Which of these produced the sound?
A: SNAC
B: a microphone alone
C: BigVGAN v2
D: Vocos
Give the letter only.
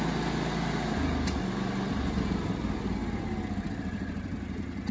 B